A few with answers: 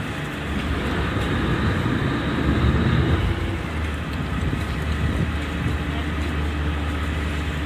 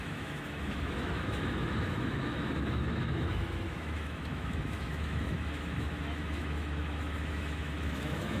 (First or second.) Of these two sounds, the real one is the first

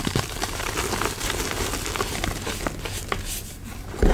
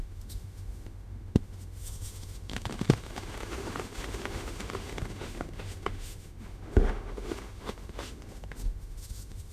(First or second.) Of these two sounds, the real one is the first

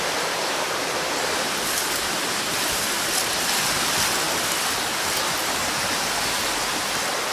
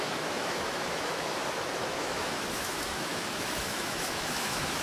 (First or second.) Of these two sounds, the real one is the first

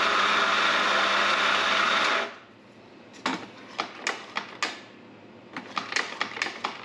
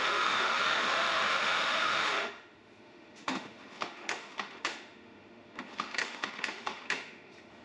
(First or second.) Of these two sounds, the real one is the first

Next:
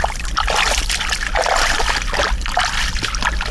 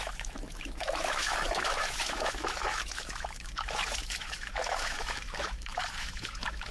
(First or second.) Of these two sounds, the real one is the first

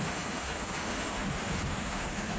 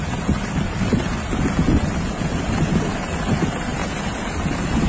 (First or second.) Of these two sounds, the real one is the second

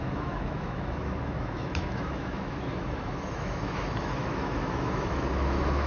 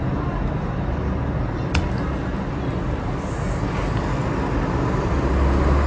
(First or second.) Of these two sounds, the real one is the second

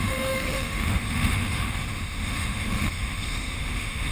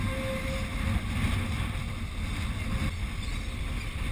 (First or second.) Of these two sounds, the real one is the second